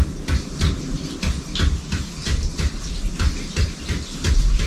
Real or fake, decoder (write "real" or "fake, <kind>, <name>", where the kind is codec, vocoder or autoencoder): real